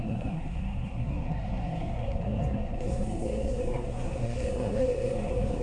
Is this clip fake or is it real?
fake